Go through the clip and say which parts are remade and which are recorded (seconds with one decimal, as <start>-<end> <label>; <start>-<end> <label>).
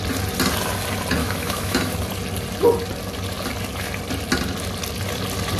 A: 0.0-1.2 recorded; 1.2-1.9 remade; 1.9-5.6 recorded